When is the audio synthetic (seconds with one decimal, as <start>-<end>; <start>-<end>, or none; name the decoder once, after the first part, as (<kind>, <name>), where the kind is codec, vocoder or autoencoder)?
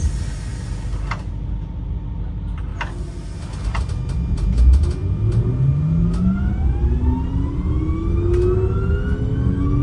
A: none